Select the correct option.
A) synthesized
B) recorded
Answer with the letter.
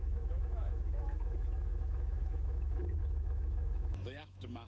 A